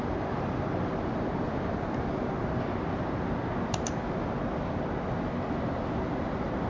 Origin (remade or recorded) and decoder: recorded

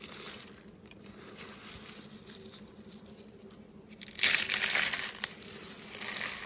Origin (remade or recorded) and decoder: recorded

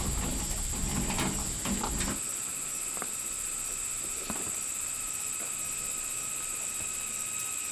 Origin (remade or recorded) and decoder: recorded